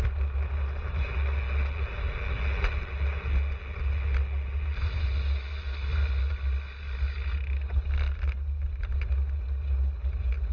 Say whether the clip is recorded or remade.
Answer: recorded